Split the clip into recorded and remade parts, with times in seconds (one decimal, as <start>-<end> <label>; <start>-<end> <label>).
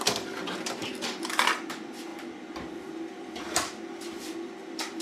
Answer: 0.0-2.1 remade; 2.1-3.0 recorded; 3.0-5.0 remade